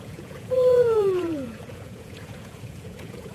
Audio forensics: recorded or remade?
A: remade